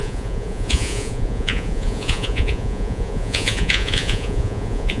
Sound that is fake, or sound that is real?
fake